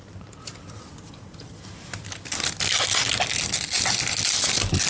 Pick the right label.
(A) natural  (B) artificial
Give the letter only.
A